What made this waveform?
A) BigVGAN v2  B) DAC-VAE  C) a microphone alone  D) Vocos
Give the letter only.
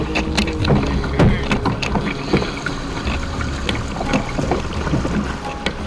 C